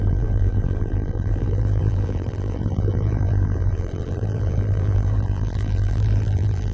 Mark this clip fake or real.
fake